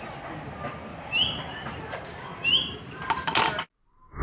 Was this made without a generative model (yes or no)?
yes